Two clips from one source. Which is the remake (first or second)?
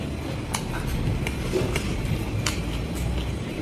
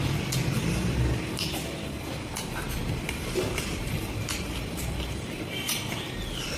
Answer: second